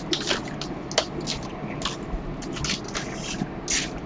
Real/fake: real